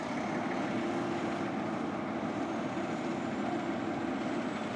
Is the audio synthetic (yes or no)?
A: no